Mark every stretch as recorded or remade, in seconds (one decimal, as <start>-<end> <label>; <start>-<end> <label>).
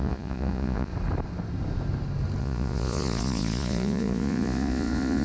0.0-0.9 remade; 0.9-2.4 recorded; 2.4-5.2 remade